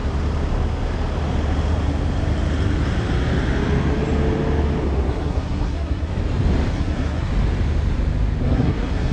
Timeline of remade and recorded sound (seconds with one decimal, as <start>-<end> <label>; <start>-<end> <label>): 0.0-5.1 recorded; 5.1-6.1 remade; 6.1-6.7 recorded; 6.7-7.3 remade; 7.3-8.4 recorded; 8.4-9.1 remade